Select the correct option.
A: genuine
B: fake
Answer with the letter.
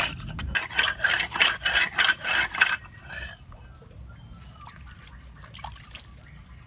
A